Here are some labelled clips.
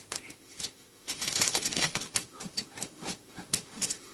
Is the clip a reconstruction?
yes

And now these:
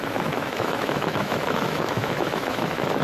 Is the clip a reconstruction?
yes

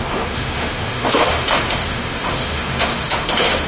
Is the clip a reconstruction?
yes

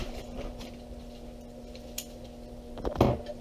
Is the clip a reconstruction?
no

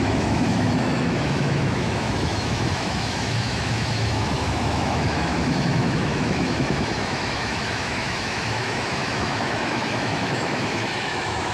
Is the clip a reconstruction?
yes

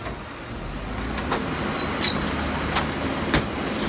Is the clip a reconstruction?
no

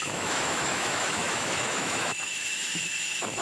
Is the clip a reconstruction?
yes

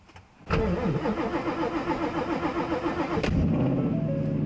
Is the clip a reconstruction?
no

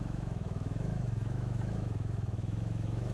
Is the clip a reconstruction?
yes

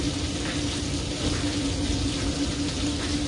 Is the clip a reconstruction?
no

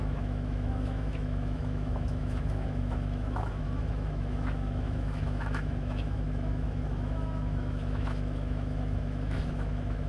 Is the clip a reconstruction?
yes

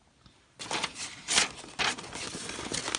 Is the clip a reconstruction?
no